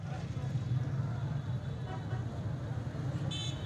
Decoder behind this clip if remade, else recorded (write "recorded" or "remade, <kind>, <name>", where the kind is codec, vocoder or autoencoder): recorded